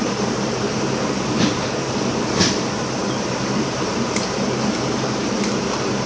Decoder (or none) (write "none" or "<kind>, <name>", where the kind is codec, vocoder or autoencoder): vocoder, BigVGAN v2